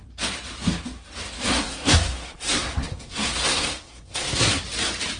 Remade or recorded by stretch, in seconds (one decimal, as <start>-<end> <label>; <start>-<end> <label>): 0.0-1.5 recorded; 1.5-4.6 remade; 4.6-5.2 recorded